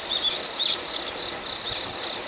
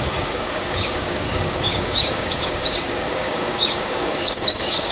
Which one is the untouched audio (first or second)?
first